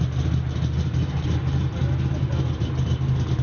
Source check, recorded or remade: recorded